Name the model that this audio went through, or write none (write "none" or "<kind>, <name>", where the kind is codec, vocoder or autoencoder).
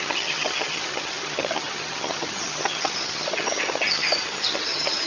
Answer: vocoder, HiFi-GAN